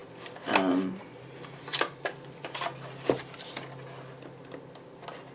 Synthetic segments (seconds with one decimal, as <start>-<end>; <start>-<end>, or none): none